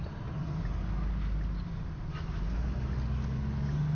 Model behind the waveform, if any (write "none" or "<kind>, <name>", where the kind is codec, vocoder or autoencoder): none